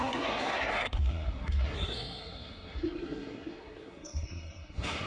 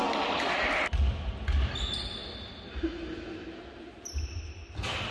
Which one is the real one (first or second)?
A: second